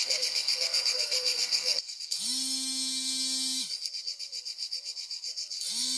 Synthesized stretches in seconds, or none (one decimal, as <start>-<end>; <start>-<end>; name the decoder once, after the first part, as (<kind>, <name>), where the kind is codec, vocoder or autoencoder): 0.0-6.0 (codec, SNAC)